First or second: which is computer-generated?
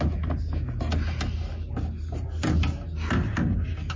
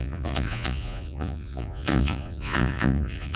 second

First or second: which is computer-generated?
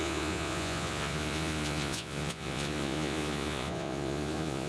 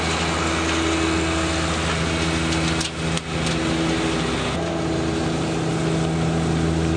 first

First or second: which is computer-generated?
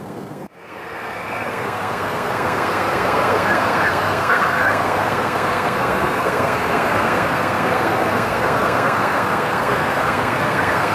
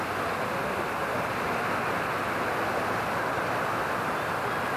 first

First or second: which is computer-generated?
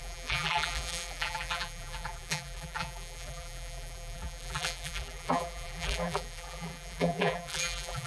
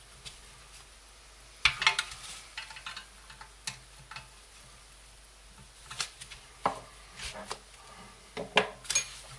first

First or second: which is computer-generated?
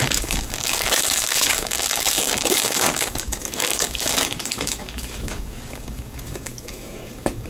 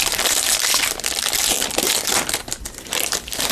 first